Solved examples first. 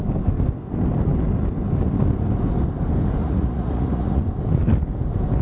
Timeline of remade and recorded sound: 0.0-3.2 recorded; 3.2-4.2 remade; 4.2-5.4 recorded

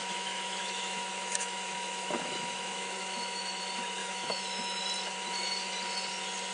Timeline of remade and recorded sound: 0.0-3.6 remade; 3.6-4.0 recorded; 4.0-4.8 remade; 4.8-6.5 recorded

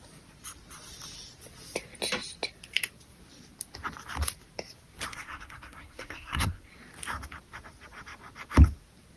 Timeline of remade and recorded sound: 0.0-5.1 recorded; 5.1-6.7 remade; 6.7-9.2 recorded

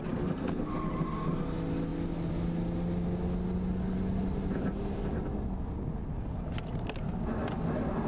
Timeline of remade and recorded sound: 0.0-8.1 recorded

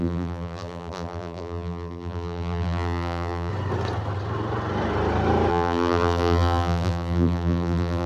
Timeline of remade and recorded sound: 0.0-3.5 remade; 3.5-5.5 recorded; 5.5-8.1 remade